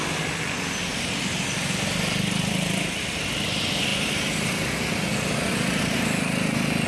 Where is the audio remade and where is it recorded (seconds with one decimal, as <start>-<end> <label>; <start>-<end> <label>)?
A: 0.0-0.9 recorded; 0.9-1.5 remade; 1.5-3.9 recorded; 3.9-4.5 remade; 4.5-6.9 recorded